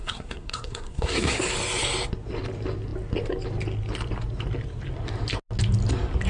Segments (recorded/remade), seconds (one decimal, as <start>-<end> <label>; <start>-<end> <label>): 0.0-1.4 remade; 1.4-6.3 recorded